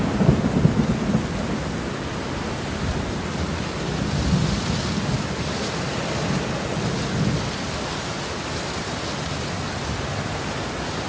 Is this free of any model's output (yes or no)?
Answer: yes